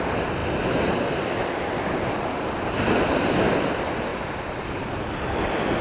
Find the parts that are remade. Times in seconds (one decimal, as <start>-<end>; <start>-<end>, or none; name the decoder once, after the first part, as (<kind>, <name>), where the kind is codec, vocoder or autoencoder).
none